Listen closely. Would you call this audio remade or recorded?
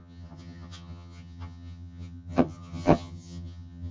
remade